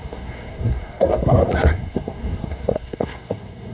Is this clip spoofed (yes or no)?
yes